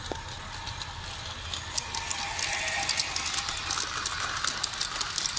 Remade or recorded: recorded